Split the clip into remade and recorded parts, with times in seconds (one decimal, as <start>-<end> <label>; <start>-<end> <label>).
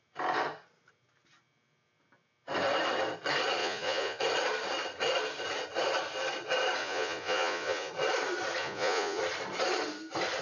0.0-3.6 recorded; 3.6-4.2 remade; 4.2-6.8 recorded; 6.8-7.9 remade; 7.9-8.6 recorded; 8.6-9.2 remade; 9.2-10.4 recorded